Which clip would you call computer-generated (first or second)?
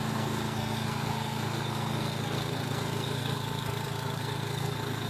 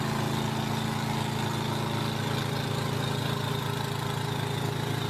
first